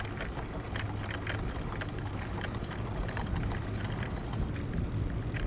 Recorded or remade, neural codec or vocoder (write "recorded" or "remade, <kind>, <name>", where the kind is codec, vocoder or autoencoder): recorded